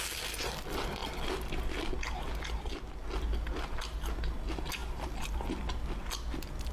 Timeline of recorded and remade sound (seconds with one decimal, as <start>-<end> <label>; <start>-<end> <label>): 0.0-6.7 recorded